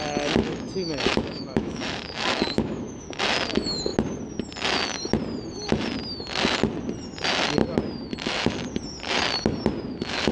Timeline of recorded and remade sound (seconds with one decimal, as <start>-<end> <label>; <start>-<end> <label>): 0.0-0.4 recorded; 0.4-3.2 remade; 3.2-10.3 recorded